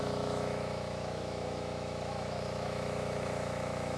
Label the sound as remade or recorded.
remade